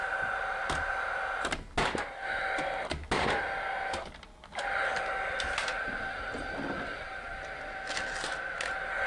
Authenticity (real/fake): real